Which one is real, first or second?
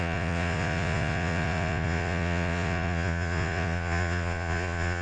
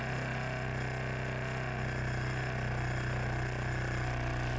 second